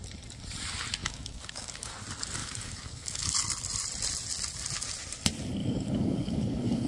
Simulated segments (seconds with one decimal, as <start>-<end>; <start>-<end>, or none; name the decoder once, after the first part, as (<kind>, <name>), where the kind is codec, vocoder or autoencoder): 1.0-1.9 (codec, DAC); 2.4-3.3; 5.6-6.9

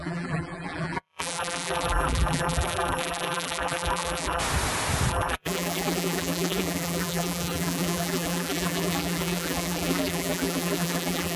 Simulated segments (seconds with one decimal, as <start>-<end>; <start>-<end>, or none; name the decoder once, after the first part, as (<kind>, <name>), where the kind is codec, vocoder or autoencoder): 0.0-4.4 (vocoder, BigVGAN v2); 5.1-11.4

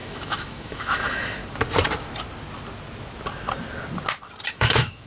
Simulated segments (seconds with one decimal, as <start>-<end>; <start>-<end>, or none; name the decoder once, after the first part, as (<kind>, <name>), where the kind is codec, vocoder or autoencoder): 0.0-1.4 (autoencoder, DAC-VAE); 4.5-5.1

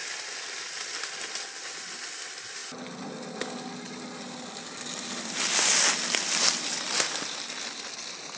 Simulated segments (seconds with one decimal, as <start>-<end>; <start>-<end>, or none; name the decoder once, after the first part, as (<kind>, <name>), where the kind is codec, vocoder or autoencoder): none

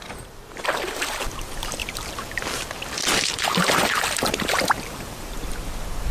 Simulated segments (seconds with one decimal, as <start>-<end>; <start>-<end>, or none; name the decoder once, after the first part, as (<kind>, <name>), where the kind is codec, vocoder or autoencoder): 1.8-5.5 (vocoder, BigVGAN v2)

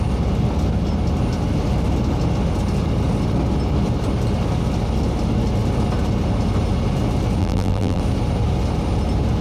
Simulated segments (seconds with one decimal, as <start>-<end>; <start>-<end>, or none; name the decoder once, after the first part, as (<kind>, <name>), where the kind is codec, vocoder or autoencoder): 7.4-8.0 (vocoder, BigVGAN v2)

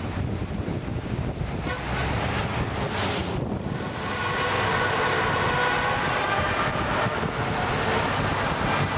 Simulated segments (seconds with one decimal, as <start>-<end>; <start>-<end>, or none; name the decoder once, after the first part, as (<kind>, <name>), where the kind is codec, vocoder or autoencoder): 0.9-1.4 (codec, DAC)